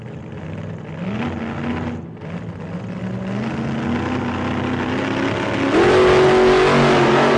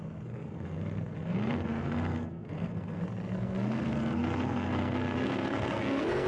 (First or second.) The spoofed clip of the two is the second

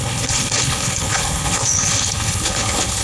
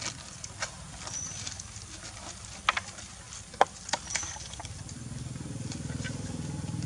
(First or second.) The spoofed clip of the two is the first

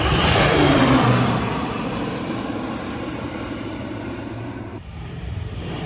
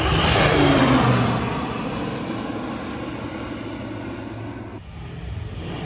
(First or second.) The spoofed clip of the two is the first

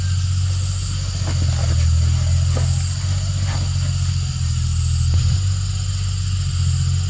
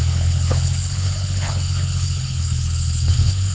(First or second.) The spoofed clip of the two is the second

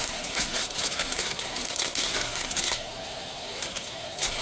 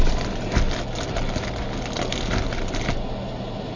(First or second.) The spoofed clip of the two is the first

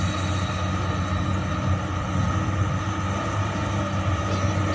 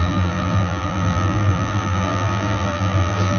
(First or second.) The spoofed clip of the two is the second